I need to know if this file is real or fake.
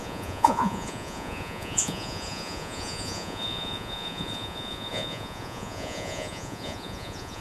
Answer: fake